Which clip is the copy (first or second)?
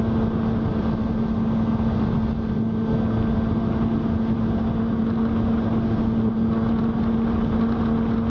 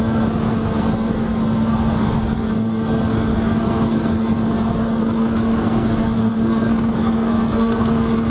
second